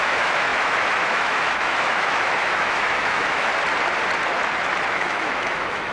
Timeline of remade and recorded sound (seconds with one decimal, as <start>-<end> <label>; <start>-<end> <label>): 0.0-3.5 remade; 3.5-4.9 recorded; 4.9-5.9 remade